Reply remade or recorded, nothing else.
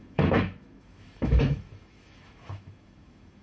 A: remade